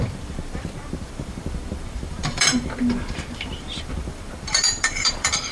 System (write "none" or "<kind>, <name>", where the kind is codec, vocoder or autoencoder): vocoder, BigVGAN v2